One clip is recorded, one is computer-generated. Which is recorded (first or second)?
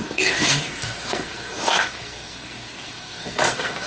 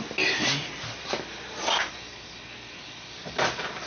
second